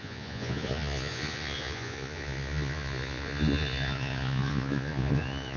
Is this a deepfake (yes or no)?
yes